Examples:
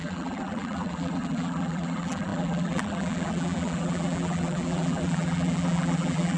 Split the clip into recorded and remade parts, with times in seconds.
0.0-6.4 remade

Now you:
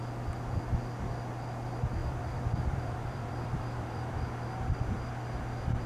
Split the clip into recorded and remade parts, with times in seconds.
0.0-2.0 recorded; 2.0-4.2 remade; 4.2-5.9 recorded

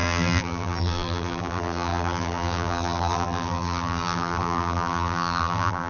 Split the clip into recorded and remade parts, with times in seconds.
0.0-5.9 remade

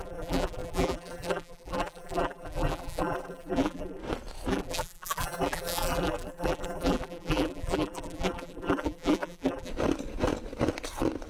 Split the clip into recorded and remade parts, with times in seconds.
0.0-4.0 remade; 4.0-4.5 recorded; 4.5-9.7 remade; 9.7-11.3 recorded

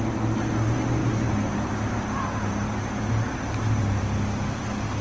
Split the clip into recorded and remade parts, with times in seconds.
0.0-1.0 recorded; 1.0-4.0 remade; 4.0-5.0 recorded

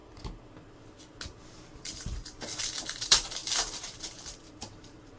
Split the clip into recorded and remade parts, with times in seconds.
0.0-1.5 recorded; 1.5-5.2 remade

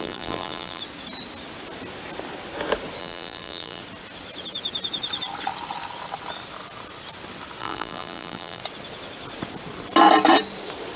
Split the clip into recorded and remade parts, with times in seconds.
0.0-0.8 remade; 0.8-3.0 recorded; 3.0-3.8 remade; 3.8-7.6 recorded; 7.6-8.6 remade; 8.6-11.0 recorded